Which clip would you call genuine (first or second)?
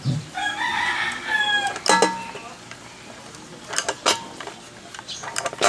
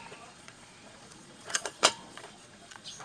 first